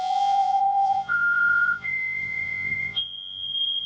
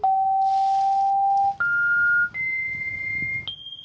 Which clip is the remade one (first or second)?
first